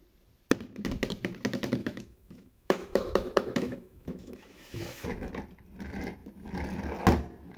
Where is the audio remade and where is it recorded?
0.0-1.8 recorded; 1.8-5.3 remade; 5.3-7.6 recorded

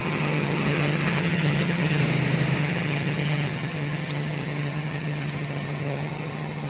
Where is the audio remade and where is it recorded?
0.0-2.0 remade; 2.0-2.6 recorded; 2.6-6.7 remade

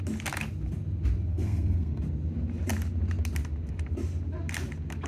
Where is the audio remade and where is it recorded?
0.0-1.3 recorded; 1.3-2.0 remade; 2.0-5.1 recorded

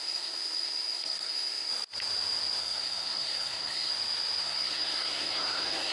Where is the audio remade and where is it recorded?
0.0-1.7 remade; 1.7-2.6 recorded; 2.6-3.9 remade; 3.9-4.4 recorded; 4.4-5.9 remade